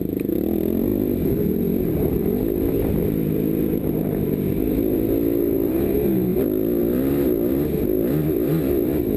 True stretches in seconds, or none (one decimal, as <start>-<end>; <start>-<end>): 0.0-2.2; 4.3-6.3; 6.8-9.2